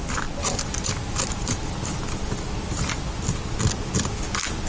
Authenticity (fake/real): real